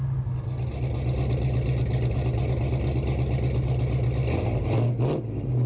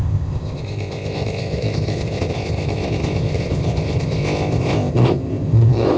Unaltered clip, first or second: first